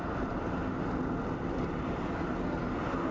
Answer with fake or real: real